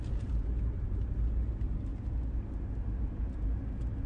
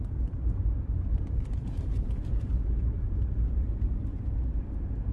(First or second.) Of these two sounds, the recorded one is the first